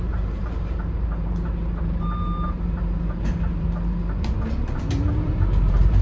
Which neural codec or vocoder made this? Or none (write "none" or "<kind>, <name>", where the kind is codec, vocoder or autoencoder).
vocoder, BigVGAN v2